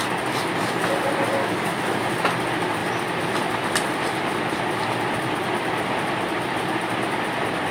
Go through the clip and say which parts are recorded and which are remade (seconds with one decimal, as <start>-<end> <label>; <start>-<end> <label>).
0.0-1.4 recorded; 1.4-2.0 remade; 2.0-7.7 recorded